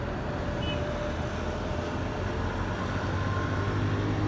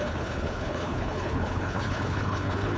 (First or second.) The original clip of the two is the first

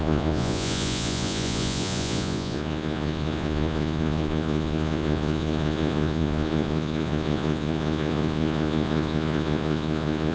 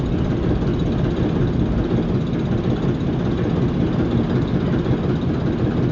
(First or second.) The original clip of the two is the second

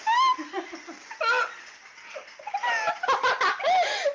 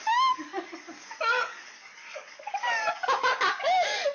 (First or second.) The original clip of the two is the first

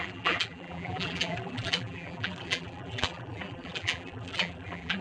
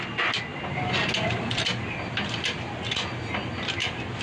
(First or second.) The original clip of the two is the second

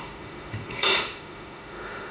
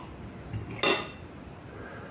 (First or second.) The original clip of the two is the second